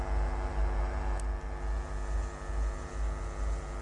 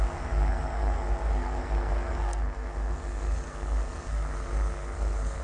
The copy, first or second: second